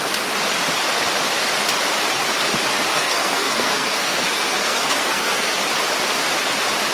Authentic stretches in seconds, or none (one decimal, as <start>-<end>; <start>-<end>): 0.0-2.9; 5.5-6.9